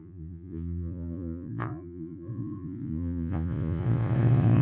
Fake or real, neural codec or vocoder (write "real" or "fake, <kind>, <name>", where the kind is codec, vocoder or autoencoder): fake, vocoder, Vocos